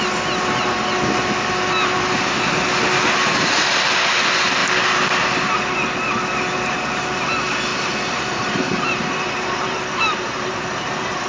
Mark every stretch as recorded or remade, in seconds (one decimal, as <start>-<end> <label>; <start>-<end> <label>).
0.0-7.7 recorded; 7.7-11.3 remade